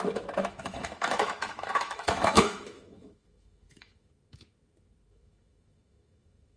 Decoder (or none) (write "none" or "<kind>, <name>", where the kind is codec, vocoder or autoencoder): autoencoder, DAC-VAE